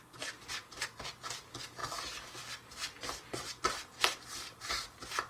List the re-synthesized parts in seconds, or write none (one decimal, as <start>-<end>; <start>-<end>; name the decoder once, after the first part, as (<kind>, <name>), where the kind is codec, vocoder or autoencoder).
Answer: 0.0-5.3 (vocoder, BigVGAN v2)